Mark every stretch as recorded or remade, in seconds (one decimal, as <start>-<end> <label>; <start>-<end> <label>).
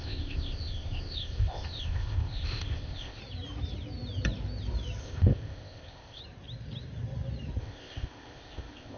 0.0-3.2 remade; 3.2-5.0 recorded; 5.0-6.2 remade; 6.2-7.6 recorded; 7.6-9.0 remade